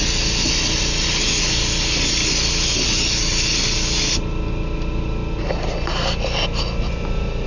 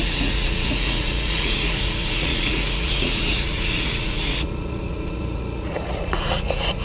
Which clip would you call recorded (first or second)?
first